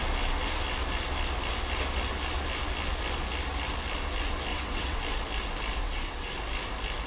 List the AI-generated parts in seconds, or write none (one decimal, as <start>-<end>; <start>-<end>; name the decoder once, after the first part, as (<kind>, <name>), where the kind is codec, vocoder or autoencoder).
4.5-5.0 (vocoder, WaveNeXt); 5.8-6.3